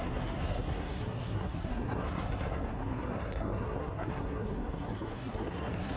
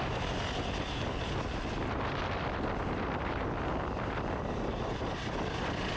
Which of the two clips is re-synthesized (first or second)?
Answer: first